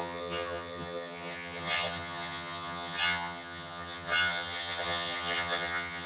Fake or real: fake